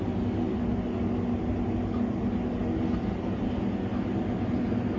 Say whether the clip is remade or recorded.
recorded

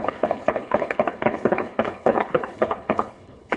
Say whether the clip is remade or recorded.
remade